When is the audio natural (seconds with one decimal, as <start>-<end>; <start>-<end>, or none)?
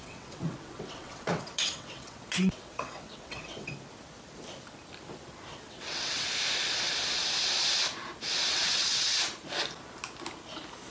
3.7-5.5; 6.3-8.5; 9.2-10.9